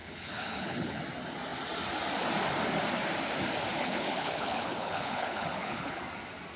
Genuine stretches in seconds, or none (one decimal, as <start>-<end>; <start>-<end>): 1.0-3.8; 6.0-6.6